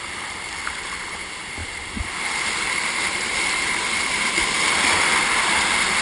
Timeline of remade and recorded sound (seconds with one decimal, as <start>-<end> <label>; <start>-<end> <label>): 0.0-1.6 recorded; 1.6-4.7 remade; 4.7-6.0 recorded